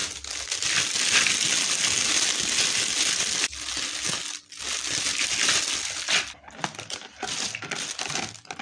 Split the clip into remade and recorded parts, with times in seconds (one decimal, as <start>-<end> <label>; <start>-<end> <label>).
0.0-8.6 recorded